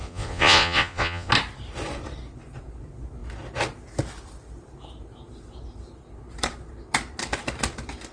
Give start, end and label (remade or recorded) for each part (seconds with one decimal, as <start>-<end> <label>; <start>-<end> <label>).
0.0-1.3 remade; 1.3-8.1 recorded